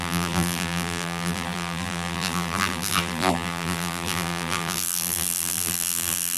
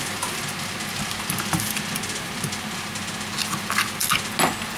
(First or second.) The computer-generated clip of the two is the first